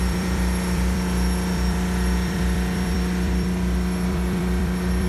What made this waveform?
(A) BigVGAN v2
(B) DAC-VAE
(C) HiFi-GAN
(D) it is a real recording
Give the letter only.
A